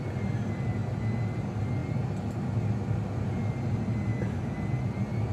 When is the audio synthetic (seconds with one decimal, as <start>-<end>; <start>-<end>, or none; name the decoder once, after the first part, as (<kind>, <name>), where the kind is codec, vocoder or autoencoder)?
none